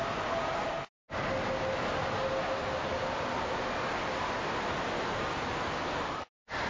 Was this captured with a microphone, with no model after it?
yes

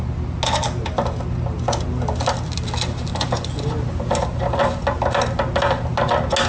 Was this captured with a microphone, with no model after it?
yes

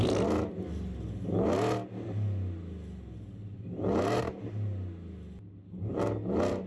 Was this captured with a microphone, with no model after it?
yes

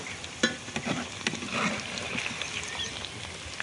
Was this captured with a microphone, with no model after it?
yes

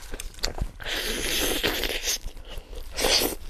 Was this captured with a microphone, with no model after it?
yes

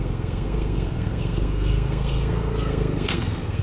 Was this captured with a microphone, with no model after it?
no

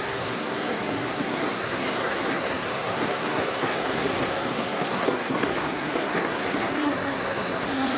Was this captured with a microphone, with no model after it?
no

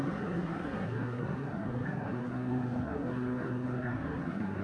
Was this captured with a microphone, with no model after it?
no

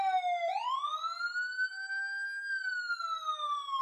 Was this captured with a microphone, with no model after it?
yes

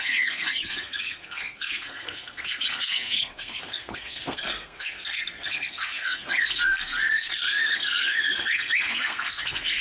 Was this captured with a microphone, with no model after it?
no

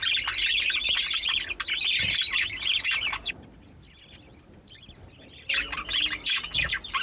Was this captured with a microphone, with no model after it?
yes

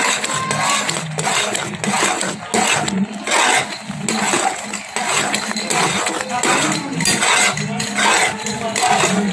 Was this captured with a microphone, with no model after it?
yes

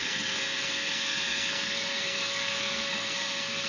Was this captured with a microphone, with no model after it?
no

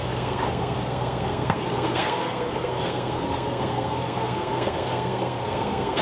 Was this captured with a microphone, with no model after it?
no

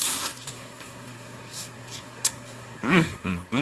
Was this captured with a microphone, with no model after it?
no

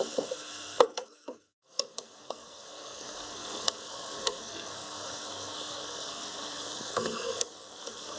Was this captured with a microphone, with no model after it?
no